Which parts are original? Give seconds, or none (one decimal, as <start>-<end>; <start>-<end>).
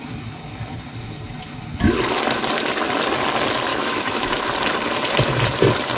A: 0.0-3.7; 4.4-6.0